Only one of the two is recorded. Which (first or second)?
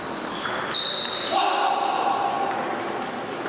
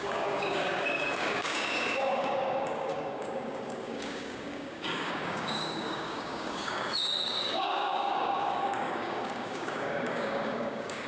first